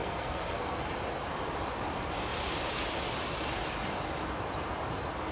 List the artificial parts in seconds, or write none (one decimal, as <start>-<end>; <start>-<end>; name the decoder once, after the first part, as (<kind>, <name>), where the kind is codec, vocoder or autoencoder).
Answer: 0.0-0.9 (codec, SNAC)